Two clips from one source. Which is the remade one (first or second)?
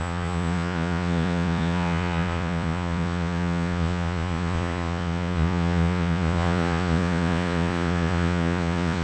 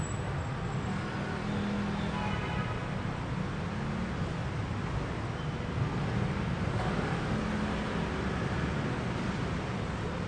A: first